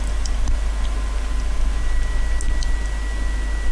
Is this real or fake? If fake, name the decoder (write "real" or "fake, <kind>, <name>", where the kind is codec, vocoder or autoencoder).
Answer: real